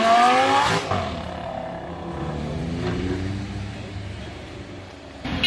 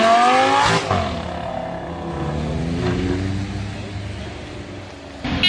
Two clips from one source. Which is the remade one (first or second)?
first